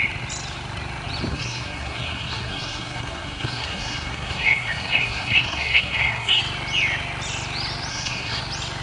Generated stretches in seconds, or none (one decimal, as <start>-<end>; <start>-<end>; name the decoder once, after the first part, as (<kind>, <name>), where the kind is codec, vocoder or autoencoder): 1.3-6.4 (codec, SNAC); 7.9-8.4